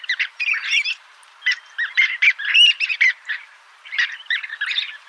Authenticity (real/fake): fake